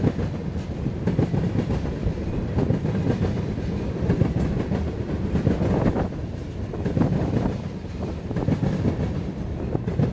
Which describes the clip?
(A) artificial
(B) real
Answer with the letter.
A